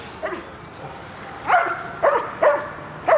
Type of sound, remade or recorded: recorded